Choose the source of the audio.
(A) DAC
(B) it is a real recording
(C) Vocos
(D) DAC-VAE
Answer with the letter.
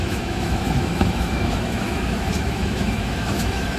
D